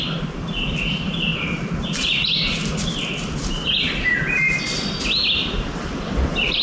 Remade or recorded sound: recorded